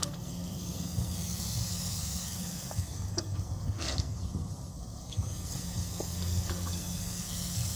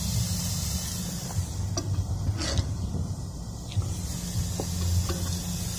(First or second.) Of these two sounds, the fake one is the first